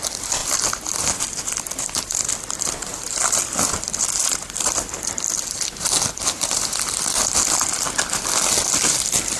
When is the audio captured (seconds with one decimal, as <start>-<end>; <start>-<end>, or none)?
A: 0.0-0.4; 3.2-4.2; 7.8-9.4